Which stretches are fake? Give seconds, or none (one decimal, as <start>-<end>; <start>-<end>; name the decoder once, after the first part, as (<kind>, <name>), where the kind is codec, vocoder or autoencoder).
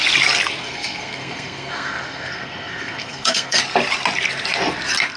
0.6-3.6 (codec, SNAC)